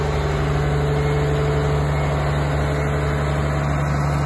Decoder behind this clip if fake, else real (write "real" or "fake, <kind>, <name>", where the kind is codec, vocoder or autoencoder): real